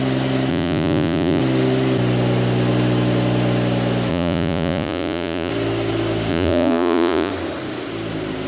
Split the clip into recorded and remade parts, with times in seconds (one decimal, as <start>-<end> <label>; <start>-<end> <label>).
0.0-0.5 recorded; 0.5-1.4 remade; 1.4-4.1 recorded; 4.1-5.5 remade; 5.5-6.3 recorded; 6.3-7.3 remade; 7.3-8.5 recorded